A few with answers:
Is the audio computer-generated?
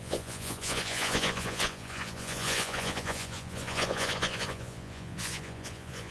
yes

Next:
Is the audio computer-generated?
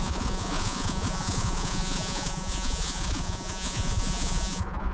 yes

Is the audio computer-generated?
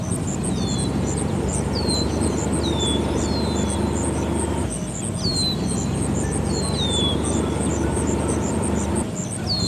no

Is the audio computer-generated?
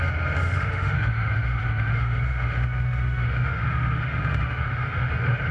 yes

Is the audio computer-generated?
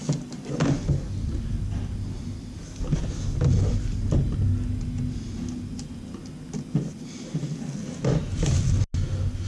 no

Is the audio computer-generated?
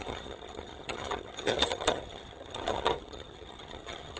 yes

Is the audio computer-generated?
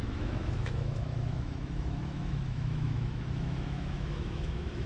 yes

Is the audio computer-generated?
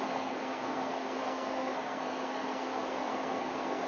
yes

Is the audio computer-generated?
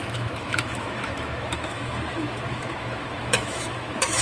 yes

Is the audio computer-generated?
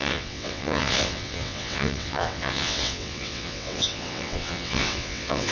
yes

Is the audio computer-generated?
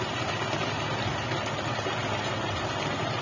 no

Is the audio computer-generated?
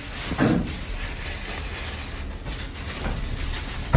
no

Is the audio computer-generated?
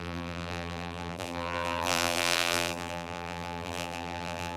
yes